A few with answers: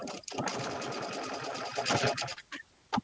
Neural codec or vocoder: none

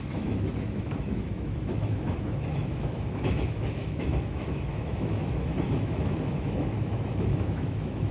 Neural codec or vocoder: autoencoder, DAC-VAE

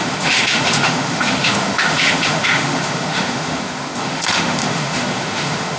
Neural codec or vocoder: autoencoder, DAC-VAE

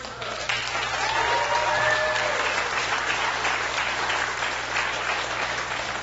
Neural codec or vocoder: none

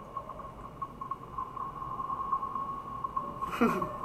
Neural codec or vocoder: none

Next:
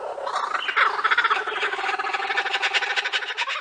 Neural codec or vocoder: none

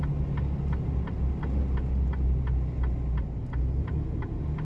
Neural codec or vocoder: none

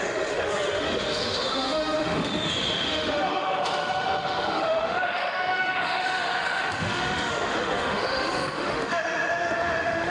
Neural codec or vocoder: autoencoder, DAC-VAE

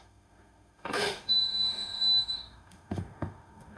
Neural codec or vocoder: autoencoder, DAC-VAE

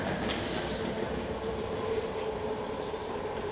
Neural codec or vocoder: none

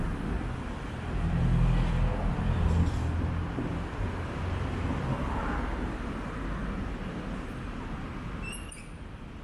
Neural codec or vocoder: none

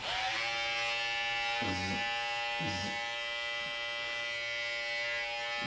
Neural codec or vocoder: none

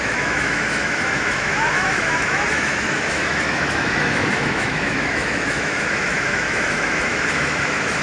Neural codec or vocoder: autoencoder, DAC-VAE